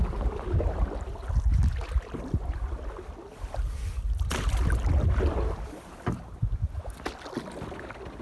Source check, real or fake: real